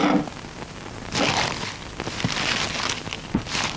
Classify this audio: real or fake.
real